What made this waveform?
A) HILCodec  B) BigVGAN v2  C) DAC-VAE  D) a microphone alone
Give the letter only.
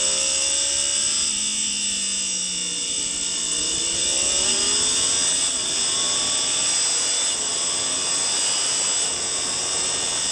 D